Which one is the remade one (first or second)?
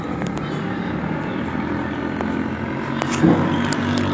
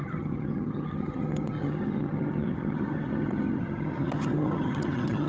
second